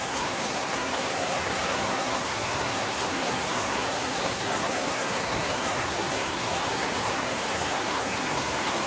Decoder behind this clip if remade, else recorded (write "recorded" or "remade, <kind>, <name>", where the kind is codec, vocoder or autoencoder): remade, codec, SNAC